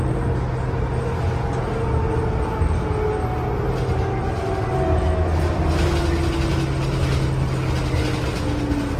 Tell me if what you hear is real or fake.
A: real